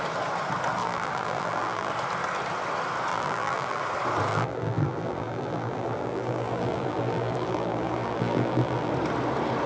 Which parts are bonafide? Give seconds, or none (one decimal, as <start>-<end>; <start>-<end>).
0.0-0.8; 1.9-3.1; 3.8-4.3; 8.9-9.7